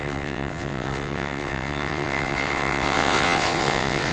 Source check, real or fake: fake